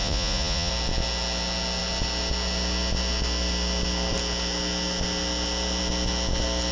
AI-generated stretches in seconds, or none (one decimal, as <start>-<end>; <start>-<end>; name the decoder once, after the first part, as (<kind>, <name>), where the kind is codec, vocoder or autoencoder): 0.0-0.7 (vocoder, Vocos)